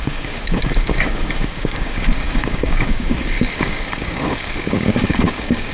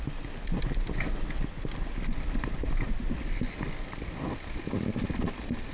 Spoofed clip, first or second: first